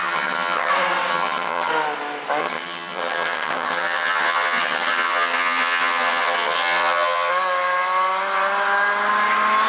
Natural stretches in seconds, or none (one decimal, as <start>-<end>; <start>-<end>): 0.7-1.1; 1.7-2.4; 7.3-9.7